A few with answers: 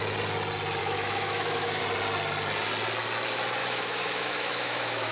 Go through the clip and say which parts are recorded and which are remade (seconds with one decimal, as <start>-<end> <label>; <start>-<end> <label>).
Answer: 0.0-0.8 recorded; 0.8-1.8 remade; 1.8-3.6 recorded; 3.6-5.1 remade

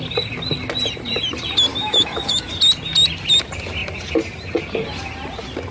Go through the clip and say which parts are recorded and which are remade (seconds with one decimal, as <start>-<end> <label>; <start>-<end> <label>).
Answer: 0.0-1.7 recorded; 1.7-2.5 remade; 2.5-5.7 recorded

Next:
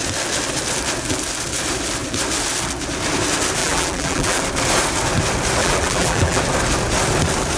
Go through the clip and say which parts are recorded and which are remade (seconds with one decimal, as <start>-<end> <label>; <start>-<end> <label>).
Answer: 0.0-3.6 recorded; 3.6-4.4 remade; 4.4-5.6 recorded; 5.6-6.4 remade; 6.4-7.6 recorded